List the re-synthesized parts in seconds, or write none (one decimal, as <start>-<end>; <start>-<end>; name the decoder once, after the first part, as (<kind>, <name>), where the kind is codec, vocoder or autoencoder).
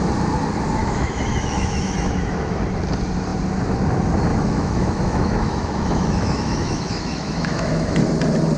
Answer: 0.8-2.6 (autoencoder, DAC-VAE); 4.3-8.0